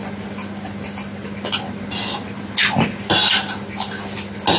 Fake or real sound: real